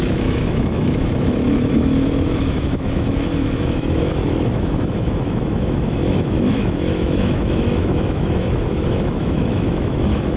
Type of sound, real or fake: fake